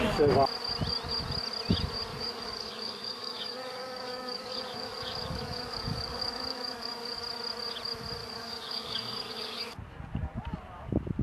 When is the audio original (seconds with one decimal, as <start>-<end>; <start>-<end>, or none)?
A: 0.0-2.1; 7.2-8.2; 9.6-11.2